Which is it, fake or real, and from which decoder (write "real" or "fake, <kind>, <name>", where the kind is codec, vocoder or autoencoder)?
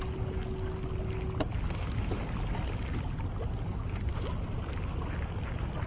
real